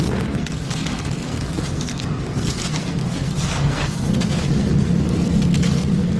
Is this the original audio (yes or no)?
no